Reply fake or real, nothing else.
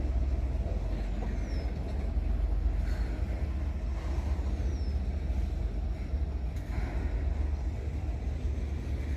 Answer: real